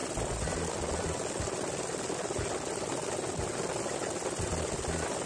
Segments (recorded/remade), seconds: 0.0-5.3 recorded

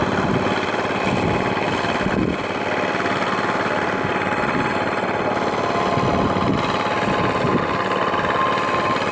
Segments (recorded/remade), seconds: 0.0-9.1 recorded

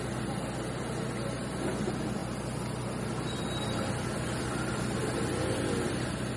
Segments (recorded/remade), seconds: 0.0-6.4 recorded